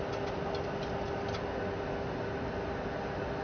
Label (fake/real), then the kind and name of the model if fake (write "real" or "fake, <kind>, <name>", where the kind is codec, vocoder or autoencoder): real